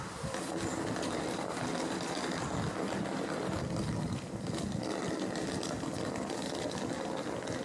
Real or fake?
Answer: real